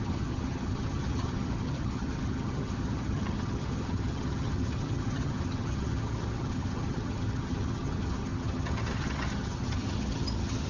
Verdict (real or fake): fake